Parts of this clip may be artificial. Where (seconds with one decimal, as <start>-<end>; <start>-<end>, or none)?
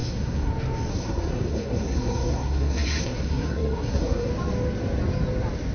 0.0-0.5; 0.9-4.3